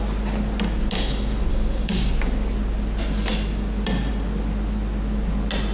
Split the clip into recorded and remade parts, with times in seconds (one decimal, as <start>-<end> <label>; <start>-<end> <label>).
0.0-1.5 recorded; 1.5-2.1 remade; 2.1-5.7 recorded